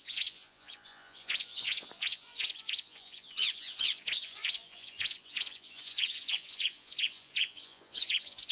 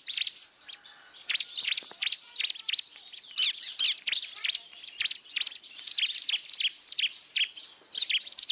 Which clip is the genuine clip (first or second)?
second